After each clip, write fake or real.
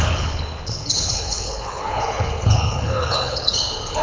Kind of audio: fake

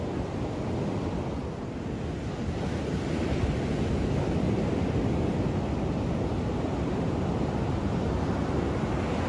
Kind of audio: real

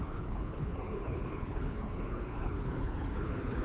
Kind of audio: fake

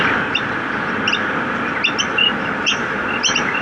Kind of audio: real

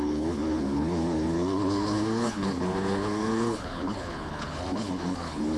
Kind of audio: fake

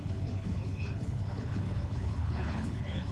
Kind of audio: fake